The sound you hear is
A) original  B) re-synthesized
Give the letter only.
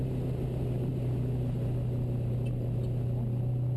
A